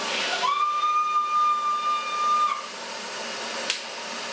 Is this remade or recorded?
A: recorded